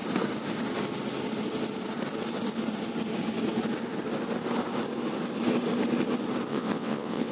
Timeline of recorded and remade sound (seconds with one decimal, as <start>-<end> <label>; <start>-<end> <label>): 0.0-6.5 recorded; 6.5-7.3 remade